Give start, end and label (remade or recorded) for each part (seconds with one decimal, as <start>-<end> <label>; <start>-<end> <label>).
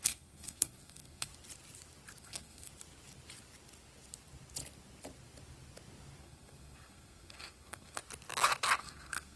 0.0-1.3 remade; 1.3-2.2 recorded; 2.2-2.7 remade; 2.7-6.2 recorded; 6.2-8.0 remade; 8.0-8.8 recorded; 8.8-9.4 remade